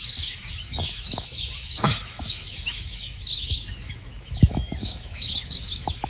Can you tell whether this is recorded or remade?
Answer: remade